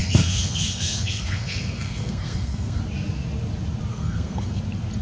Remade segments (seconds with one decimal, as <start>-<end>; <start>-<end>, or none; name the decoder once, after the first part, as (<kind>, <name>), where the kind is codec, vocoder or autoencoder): 0.0-2.8 (codec, SNAC); 3.9-4.6